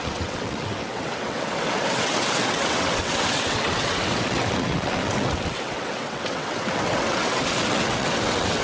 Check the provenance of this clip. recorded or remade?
remade